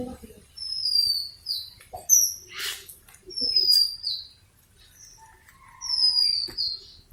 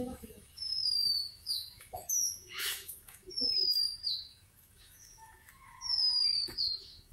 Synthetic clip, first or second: second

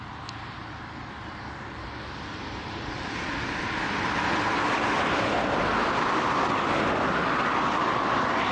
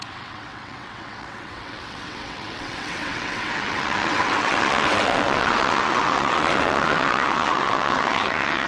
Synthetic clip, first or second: second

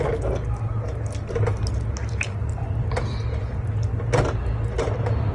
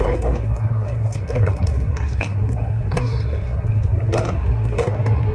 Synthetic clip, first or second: second